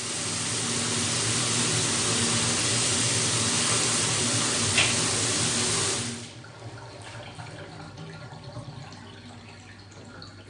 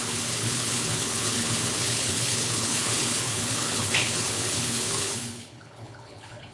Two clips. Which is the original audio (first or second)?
first